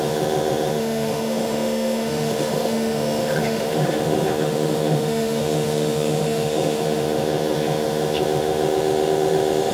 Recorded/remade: remade